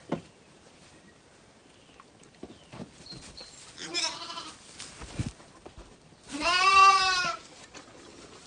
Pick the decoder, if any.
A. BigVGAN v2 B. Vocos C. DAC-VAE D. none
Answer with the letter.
A